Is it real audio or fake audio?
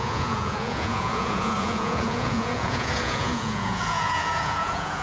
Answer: fake